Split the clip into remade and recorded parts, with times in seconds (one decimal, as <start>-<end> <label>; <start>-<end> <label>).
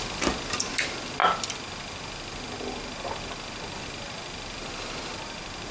0.0-5.7 recorded